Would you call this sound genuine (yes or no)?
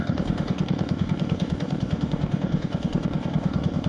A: no